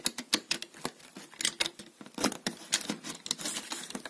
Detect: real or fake real